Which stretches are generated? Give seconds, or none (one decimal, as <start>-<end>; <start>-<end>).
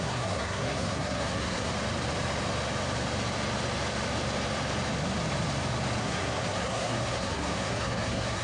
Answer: 0.0-1.7; 6.0-8.4